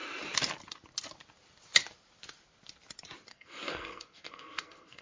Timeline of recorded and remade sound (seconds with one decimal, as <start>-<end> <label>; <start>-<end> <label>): 0.0-3.3 recorded; 3.3-5.0 remade